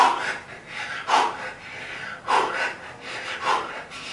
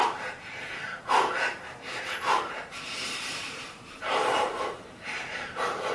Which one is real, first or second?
first